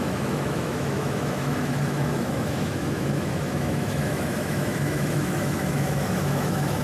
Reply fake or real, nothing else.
fake